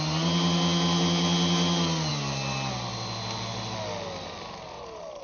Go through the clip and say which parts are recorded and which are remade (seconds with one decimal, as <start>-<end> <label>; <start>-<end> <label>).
0.0-5.2 recorded